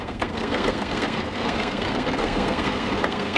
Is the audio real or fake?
fake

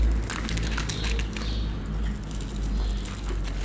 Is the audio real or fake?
real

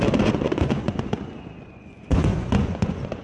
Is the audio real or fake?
fake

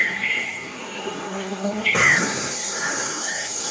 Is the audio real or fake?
fake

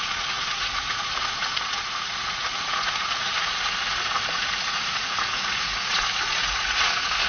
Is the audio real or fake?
fake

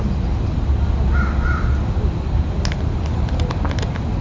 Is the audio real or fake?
real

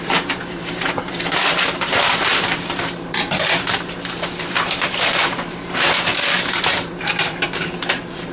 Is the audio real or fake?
fake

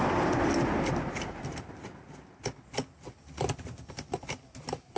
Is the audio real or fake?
real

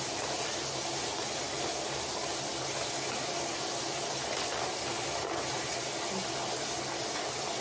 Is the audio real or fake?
real